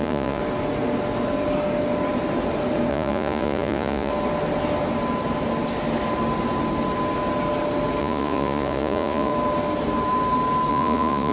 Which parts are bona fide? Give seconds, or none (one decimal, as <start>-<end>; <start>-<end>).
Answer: 0.4-2.9; 4.1-8.0; 9.3-10.7